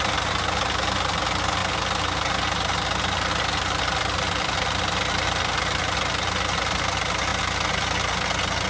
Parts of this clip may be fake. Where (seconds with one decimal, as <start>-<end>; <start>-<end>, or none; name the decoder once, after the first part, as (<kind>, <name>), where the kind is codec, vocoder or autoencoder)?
none